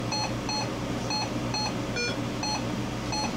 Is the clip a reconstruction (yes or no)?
no